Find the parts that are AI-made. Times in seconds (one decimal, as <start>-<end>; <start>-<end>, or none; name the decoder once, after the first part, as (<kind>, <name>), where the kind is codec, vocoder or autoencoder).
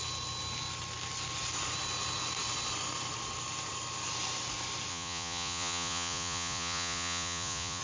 4.9-7.8 (vocoder, Vocos)